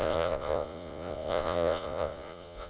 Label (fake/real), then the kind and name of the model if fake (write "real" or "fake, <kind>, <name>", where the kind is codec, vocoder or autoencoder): fake, vocoder, Vocos